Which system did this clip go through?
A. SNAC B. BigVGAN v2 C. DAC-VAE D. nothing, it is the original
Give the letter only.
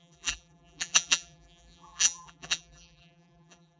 B